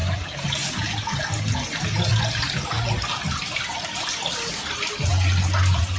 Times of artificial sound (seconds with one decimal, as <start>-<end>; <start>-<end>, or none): none